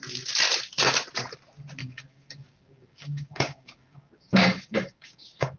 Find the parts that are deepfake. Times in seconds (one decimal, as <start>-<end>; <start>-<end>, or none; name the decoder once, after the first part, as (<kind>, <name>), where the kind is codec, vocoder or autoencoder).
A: 1.8-5.6 (codec, DAC)

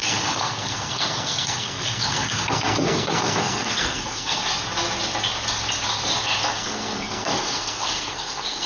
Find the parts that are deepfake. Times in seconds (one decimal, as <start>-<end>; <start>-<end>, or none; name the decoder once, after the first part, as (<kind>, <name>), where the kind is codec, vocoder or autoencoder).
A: 0.0-4.4 (codec, SNAC); 6.5-8.7